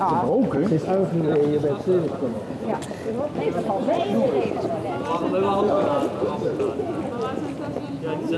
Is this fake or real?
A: real